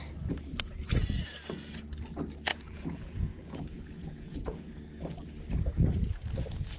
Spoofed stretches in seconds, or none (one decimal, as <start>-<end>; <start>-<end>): 2.5-4.7